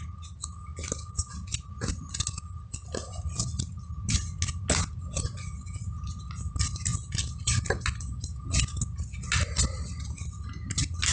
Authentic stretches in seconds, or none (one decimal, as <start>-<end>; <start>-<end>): 0.0-11.1